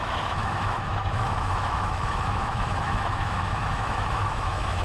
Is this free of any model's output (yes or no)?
no